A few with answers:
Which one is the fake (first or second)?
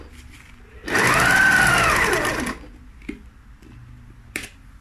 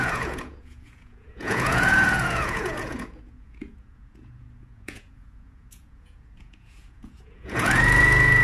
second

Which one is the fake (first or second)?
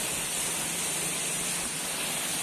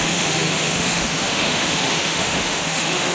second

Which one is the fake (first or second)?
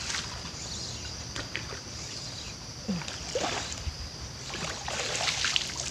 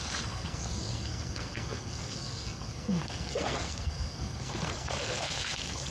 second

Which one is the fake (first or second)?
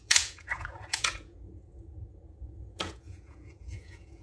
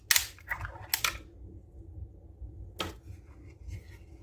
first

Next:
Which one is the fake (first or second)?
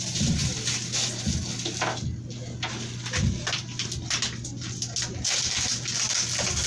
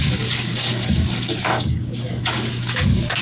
second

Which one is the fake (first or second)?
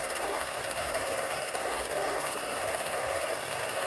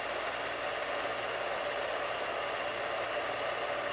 first